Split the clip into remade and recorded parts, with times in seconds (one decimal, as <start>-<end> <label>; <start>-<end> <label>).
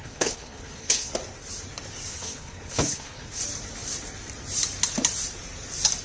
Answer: 0.0-1.1 remade; 1.1-2.1 recorded; 2.1-3.4 remade; 3.4-6.0 recorded